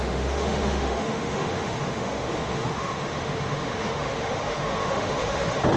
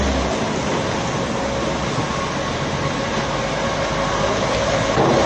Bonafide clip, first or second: second